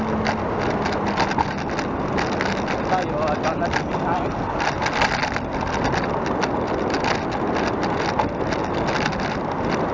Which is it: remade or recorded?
recorded